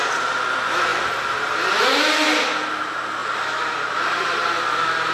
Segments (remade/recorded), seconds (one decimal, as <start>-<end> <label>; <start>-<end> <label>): 0.0-0.9 recorded; 0.9-2.0 remade; 2.0-3.2 recorded; 3.2-4.3 remade; 4.3-5.1 recorded